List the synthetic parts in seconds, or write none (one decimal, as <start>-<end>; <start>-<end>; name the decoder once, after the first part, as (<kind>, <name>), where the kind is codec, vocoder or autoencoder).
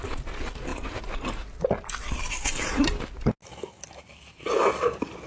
none